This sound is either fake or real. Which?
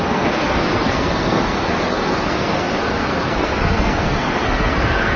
fake